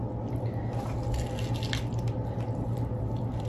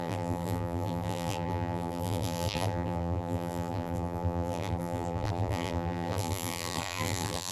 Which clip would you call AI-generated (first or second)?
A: second